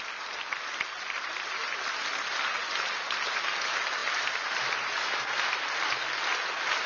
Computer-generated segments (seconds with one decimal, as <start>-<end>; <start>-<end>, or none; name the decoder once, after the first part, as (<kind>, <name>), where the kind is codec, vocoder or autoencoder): none